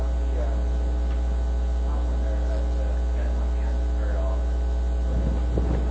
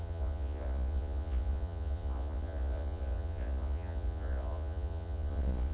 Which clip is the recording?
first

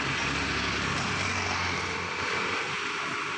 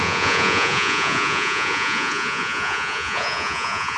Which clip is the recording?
first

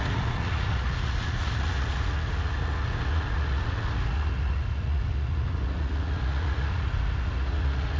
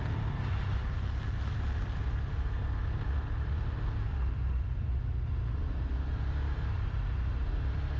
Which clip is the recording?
second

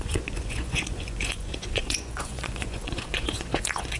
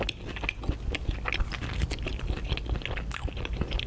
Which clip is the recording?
second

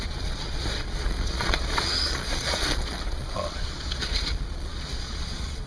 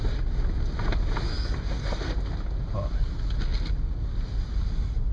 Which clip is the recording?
second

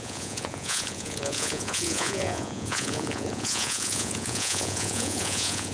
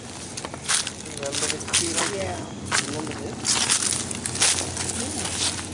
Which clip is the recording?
second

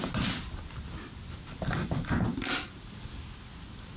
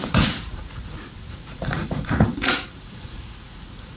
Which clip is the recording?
first